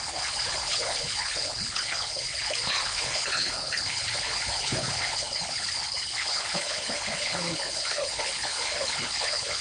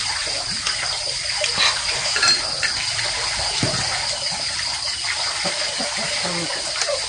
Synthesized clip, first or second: first